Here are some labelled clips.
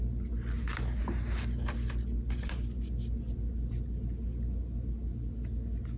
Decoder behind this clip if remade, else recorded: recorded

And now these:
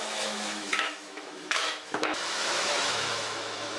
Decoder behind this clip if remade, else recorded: remade, autoencoder, DAC-VAE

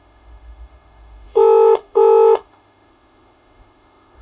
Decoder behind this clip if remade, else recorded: remade, autoencoder, DAC-VAE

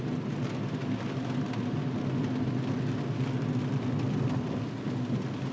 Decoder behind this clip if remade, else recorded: recorded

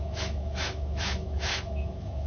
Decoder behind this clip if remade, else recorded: remade, autoencoder, DAC-VAE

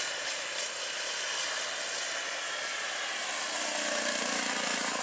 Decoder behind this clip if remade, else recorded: recorded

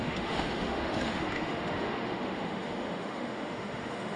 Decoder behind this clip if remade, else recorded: remade, autoencoder, DAC-VAE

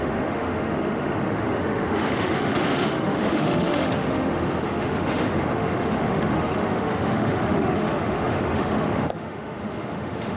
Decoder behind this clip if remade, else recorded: remade, autoencoder, DAC-VAE